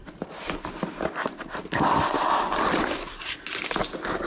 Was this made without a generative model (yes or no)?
yes